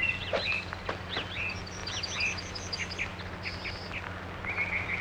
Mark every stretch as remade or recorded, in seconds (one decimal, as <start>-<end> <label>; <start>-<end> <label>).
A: 0.0-5.0 recorded